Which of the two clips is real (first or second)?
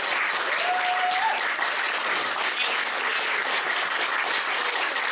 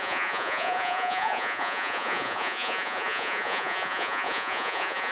first